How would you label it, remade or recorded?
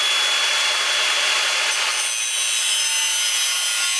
recorded